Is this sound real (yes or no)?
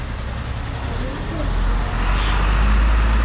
yes